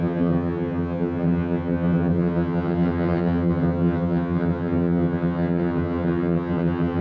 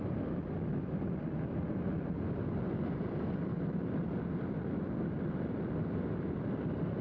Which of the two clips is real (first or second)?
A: second